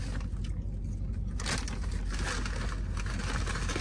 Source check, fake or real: real